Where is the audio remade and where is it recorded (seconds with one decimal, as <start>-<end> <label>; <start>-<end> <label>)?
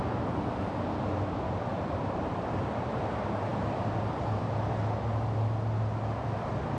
0.0-1.7 recorded; 1.7-3.0 remade; 3.0-3.5 recorded; 3.5-4.4 remade; 4.4-6.8 recorded